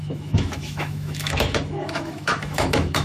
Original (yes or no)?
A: no